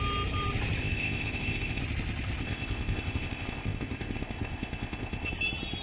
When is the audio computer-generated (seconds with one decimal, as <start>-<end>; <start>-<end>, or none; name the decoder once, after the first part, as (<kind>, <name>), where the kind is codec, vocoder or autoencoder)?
0.8-1.8 (codec, ZipCodec); 2.4-5.3